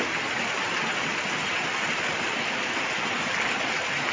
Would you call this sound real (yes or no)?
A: yes